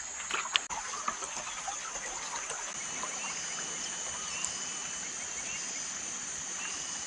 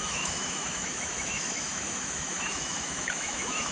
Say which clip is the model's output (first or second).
second